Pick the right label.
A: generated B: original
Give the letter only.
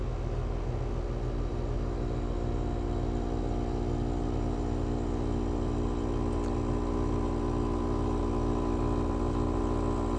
B